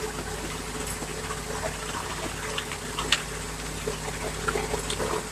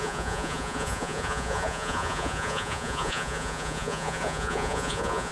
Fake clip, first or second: second